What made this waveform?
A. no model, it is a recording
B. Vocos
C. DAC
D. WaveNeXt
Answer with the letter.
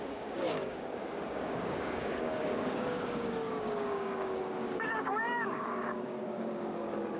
C